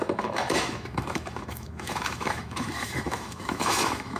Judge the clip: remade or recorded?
remade